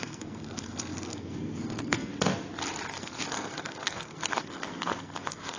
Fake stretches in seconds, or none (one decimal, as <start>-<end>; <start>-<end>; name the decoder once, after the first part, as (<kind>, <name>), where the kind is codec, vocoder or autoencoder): 0.0-2.1 (codec, SNAC); 2.9-5.6